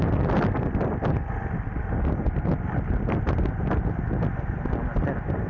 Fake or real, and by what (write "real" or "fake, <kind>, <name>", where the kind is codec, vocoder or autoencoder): real